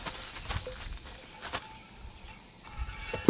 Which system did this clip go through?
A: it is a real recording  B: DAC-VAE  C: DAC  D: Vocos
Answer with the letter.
A